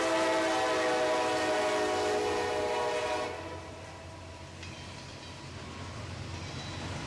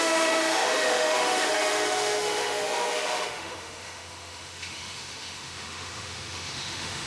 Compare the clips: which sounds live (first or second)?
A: first